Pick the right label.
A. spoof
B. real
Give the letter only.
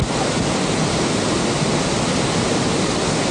B